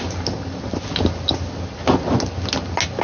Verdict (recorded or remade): recorded